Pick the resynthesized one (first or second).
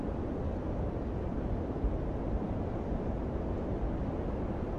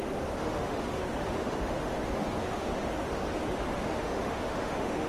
second